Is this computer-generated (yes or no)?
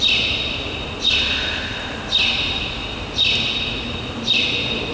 no